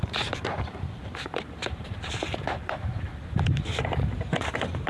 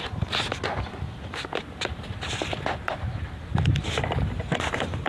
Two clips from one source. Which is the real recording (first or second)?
second